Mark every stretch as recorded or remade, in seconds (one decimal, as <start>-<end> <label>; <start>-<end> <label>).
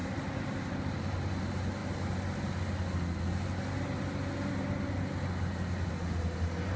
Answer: 0.0-1.3 remade; 1.3-6.8 recorded